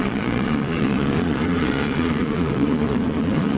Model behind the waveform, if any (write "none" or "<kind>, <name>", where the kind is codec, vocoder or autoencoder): vocoder, Vocos